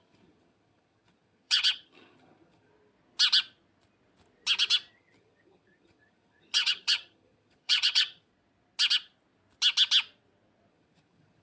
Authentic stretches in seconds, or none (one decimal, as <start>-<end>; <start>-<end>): 2.7-4.9; 8.3-10.7